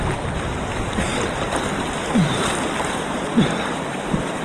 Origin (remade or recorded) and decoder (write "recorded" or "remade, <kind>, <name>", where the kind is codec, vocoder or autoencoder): recorded